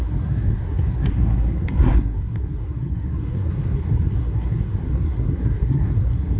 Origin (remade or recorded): remade